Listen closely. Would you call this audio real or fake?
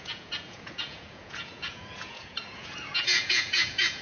fake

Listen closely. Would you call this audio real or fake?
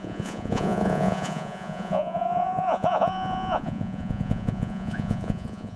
fake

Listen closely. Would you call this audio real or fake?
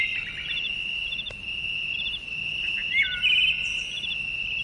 real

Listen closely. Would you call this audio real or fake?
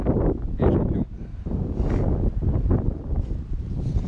real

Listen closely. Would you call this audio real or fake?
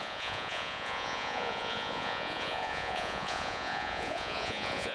fake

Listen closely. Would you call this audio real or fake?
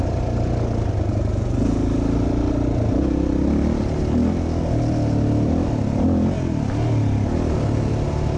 real